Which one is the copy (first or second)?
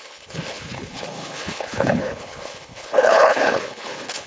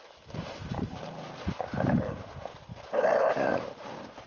first